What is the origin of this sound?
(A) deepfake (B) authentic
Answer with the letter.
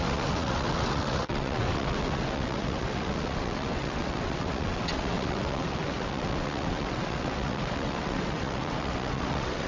A